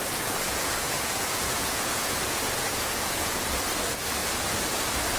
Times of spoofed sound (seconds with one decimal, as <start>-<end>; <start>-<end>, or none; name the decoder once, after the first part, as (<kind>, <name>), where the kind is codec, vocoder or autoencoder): 0.5-3.6 (vocoder, Vocos)